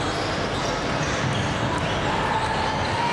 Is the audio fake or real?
real